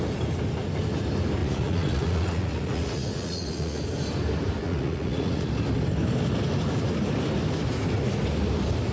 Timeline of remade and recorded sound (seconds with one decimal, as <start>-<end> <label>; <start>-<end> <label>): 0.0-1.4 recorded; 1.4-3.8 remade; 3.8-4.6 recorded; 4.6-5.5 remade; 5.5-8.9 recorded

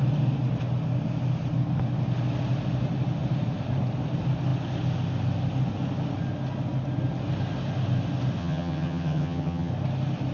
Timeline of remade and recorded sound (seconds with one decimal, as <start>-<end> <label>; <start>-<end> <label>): 0.0-8.4 recorded; 8.4-9.7 remade; 9.7-10.3 recorded

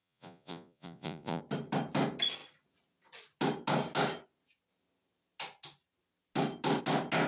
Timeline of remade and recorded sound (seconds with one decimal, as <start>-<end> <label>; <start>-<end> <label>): 0.0-1.4 remade; 1.4-7.3 recorded